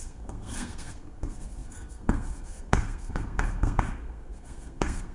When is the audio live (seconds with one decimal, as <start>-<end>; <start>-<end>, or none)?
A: none